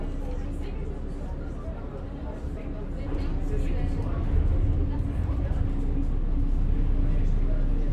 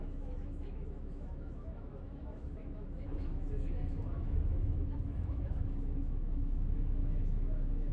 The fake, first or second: second